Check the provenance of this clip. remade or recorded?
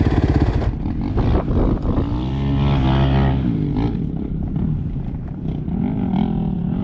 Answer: recorded